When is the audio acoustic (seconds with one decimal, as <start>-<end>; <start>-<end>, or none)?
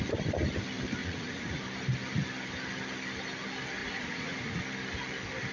0.0-1.0; 1.6-3.8; 4.6-5.5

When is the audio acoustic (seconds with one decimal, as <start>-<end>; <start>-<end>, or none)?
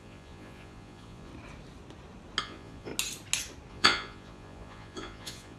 1.3-2.4; 2.9-3.7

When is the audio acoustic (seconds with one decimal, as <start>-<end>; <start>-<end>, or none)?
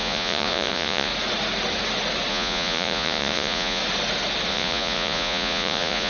1.1-2.3; 3.8-4.5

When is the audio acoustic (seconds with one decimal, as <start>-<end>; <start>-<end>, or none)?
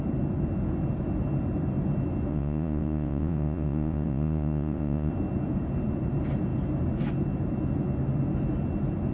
0.0-2.3; 5.1-9.1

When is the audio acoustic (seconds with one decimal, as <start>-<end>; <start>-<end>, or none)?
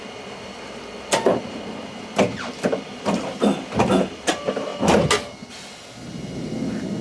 0.0-7.0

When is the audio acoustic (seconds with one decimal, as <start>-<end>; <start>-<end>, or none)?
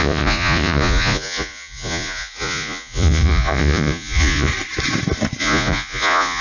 4.5-5.4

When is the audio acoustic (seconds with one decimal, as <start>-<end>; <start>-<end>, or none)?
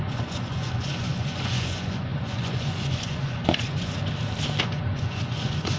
4.0-4.6